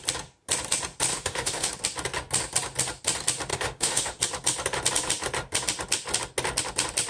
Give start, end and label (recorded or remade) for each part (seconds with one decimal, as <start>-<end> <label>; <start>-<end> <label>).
0.0-1.1 recorded; 1.1-1.7 remade; 1.7-3.5 recorded; 3.5-4.2 remade; 4.2-7.1 recorded